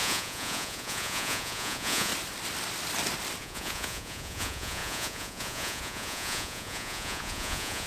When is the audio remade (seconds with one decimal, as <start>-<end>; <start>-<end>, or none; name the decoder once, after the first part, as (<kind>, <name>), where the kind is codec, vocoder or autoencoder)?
0.0-2.1 (vocoder, Vocos); 3.4-7.9